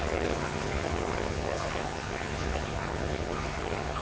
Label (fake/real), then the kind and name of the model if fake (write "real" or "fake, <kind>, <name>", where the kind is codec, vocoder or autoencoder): fake, vocoder, HiFi-GAN